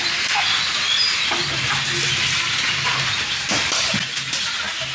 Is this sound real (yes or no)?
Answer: yes